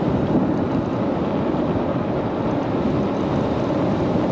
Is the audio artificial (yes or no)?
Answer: no